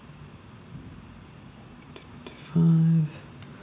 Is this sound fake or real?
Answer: real